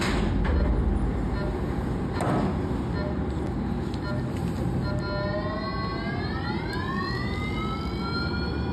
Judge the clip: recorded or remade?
recorded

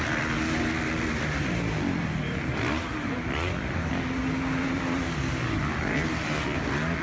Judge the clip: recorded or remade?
recorded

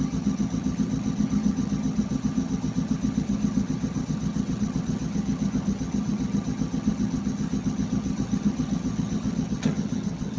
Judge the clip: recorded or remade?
remade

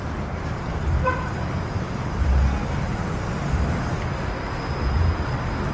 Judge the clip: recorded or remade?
recorded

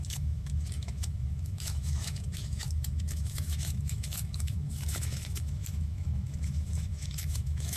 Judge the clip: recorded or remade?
remade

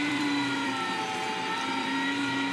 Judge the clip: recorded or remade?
remade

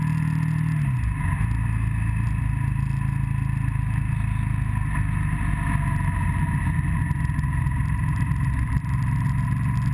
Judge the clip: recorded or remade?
recorded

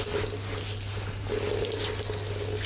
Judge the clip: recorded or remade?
recorded